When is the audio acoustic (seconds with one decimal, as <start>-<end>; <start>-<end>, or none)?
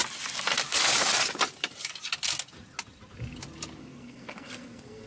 0.0-3.8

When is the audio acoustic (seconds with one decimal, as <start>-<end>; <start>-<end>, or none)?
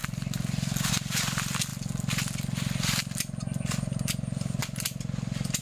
0.0-5.6